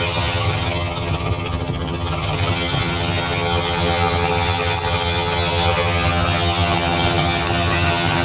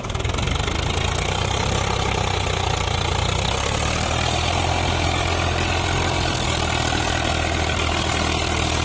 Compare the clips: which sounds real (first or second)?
second